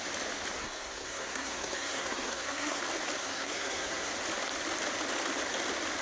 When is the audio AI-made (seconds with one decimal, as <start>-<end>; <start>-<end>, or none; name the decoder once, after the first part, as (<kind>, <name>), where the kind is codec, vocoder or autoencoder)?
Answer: 0.6-2.8 (codec, SNAC); 3.2-4.1